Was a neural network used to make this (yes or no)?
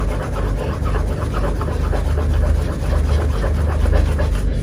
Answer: no